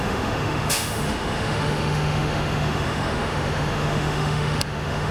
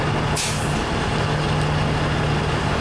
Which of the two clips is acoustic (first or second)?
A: second